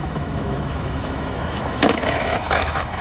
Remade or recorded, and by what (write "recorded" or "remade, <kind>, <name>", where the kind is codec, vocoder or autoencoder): remade, autoencoder, DAC-VAE